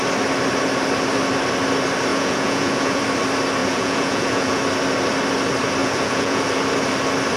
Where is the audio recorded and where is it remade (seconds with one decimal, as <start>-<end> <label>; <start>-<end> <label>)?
0.0-2.1 recorded; 2.1-3.0 remade; 3.0-3.6 recorded; 3.6-4.6 remade; 4.6-5.8 recorded; 5.8-6.4 remade; 6.4-7.4 recorded

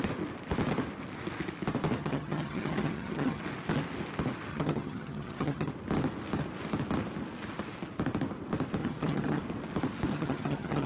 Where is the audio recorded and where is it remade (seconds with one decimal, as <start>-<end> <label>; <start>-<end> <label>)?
0.0-2.0 recorded; 2.0-3.4 remade; 3.4-4.5 recorded; 4.5-5.7 remade; 5.7-8.8 recorded; 8.8-9.4 remade; 9.4-10.1 recorded; 10.1-10.9 remade